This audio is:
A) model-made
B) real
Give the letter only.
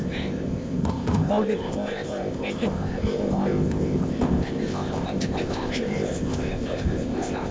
A